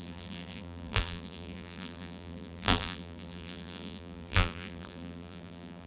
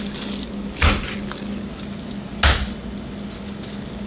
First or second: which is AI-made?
first